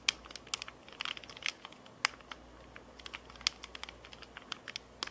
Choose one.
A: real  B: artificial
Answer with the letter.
A